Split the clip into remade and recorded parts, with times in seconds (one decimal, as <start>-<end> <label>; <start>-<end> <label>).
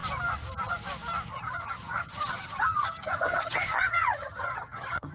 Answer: 0.0-1.3 recorded; 1.3-5.1 remade